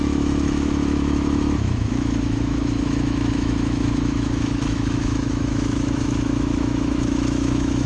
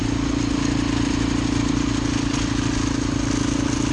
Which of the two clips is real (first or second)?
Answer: second